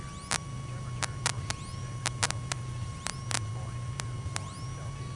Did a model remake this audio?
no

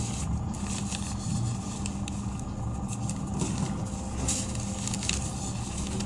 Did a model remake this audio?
no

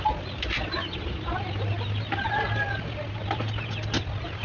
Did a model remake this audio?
no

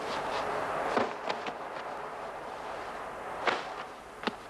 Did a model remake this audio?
no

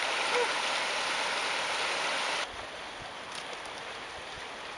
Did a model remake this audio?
no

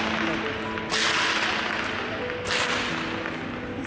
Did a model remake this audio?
no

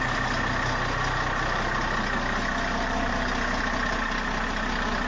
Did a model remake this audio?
no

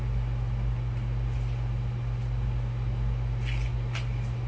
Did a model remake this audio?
no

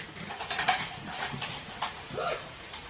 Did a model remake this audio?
yes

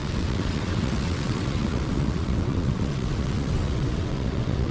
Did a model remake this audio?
yes